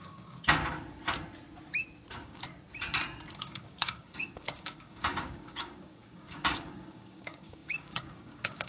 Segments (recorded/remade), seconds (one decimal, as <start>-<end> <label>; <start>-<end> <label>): 0.0-0.6 remade; 0.6-2.1 recorded; 2.1-2.5 remade; 2.5-3.3 recorded; 3.3-8.7 remade